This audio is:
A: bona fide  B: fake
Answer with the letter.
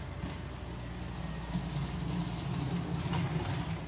A